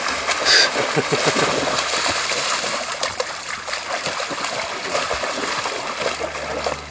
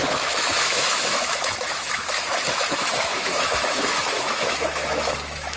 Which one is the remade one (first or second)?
second